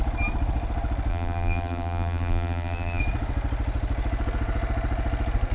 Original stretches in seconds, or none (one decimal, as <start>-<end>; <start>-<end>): 0.0-1.1; 3.0-5.5